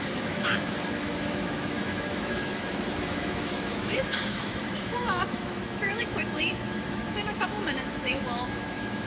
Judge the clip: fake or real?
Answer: fake